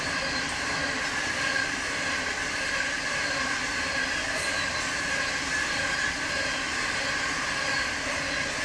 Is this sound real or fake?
real